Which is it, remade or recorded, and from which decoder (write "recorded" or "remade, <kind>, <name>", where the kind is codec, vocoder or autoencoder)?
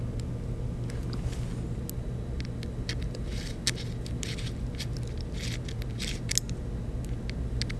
recorded